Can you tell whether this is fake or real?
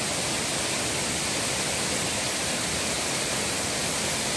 real